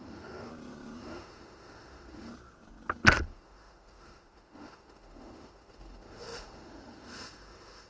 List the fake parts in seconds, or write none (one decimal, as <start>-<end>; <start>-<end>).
0.0-0.5; 1.0-2.3; 3.2-7.9